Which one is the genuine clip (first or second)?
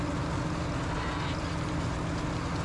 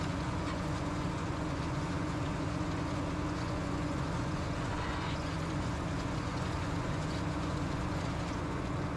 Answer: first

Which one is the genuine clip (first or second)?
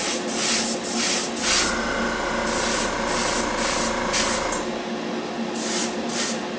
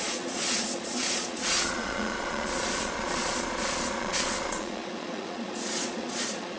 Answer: first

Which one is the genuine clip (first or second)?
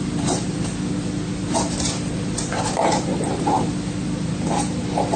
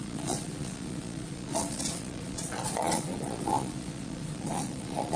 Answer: first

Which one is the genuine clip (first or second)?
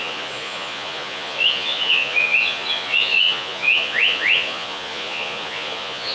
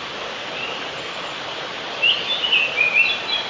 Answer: second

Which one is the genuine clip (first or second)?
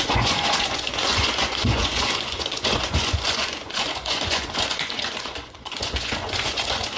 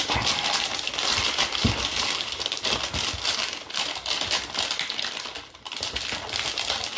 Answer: second